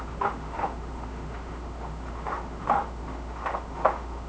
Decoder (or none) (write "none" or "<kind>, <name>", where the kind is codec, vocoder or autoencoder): autoencoder, DAC-VAE